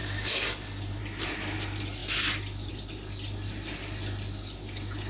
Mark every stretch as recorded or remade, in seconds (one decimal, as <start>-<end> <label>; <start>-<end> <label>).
0.0-1.0 remade; 1.0-5.1 recorded